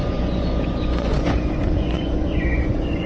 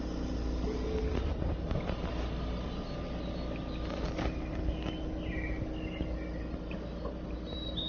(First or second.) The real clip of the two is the second